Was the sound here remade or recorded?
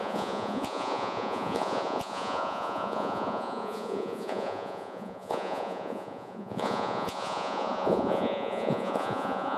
remade